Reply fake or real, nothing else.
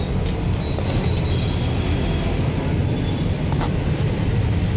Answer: real